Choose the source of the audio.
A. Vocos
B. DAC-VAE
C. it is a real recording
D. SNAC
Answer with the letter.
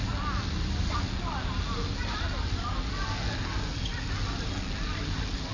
C